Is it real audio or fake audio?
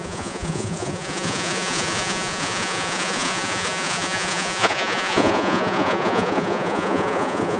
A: fake